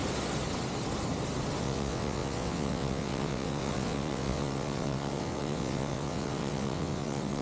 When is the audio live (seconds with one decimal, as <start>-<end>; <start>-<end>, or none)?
0.0-1.6